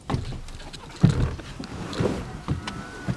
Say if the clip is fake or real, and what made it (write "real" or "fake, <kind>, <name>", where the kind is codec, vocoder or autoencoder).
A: real